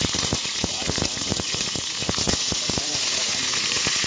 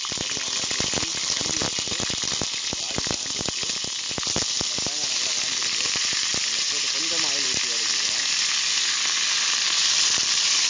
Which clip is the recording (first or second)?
second